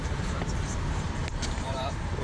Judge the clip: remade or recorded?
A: remade